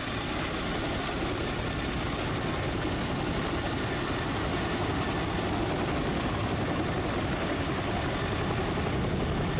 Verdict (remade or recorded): recorded